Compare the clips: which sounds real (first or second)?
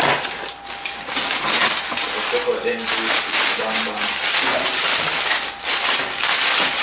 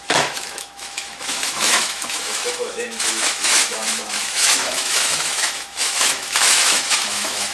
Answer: first